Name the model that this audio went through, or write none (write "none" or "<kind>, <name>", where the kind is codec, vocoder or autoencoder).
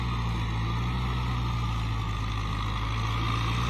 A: none